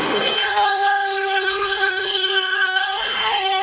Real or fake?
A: fake